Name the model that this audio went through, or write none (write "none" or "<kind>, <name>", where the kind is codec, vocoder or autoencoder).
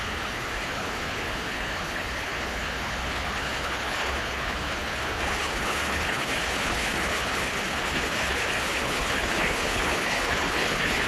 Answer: codec, HILCodec